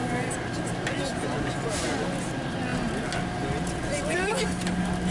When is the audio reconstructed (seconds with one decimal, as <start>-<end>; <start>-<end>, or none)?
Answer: none